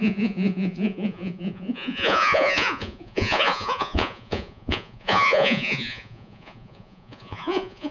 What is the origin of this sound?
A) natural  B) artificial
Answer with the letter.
B